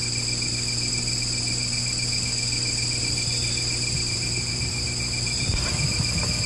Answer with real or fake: real